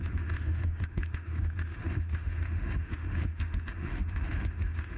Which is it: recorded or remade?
remade